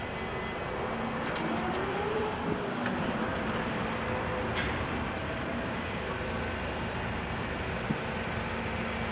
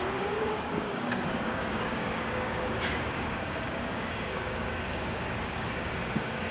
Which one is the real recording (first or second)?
first